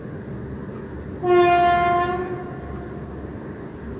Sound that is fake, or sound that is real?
real